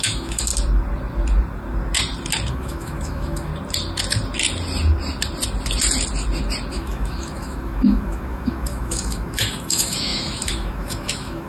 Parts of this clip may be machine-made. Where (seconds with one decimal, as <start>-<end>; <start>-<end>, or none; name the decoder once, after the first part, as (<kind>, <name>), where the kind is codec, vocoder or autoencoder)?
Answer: 0.0-0.5 (autoencoder, DAC-VAE); 2.5-3.5; 6.7-11.5

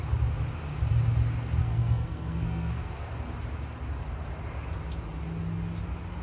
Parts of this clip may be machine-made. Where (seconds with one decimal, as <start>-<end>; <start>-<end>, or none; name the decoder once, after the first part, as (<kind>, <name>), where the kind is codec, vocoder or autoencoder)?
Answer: 1.6-3.1 (codec, SNAC)

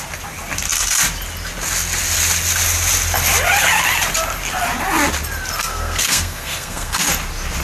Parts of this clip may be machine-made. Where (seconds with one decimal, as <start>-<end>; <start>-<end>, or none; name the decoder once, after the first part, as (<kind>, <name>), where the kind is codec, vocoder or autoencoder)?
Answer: 5.6-7.1 (codec, SNAC)

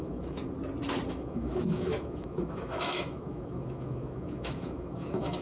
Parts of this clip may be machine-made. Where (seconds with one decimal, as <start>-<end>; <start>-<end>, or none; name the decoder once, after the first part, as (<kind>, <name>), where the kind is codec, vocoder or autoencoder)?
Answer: 0.0-0.4 (autoencoder, DAC-VAE); 1.1-5.4

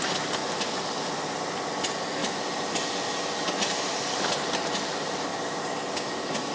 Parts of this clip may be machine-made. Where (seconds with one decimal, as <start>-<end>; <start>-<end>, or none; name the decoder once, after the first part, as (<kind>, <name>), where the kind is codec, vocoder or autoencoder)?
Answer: none

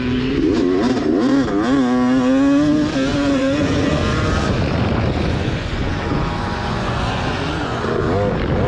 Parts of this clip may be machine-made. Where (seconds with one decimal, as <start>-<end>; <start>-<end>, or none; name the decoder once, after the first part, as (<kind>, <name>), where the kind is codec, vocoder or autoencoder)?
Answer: 3.1-7.8 (vocoder, Vocos)

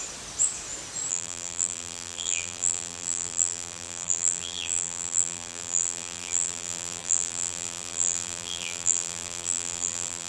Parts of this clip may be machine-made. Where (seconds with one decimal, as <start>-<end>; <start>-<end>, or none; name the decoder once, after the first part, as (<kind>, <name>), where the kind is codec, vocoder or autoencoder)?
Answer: 1.1-10.3 (vocoder, BigVGAN v2)

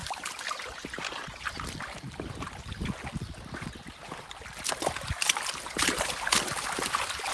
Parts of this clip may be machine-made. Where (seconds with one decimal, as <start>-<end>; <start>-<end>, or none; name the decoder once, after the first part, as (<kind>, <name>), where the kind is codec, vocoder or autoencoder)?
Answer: none